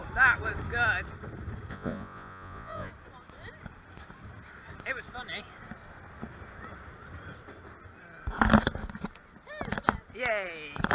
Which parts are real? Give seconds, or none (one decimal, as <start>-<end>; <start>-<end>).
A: 0.0-1.7; 2.9-10.9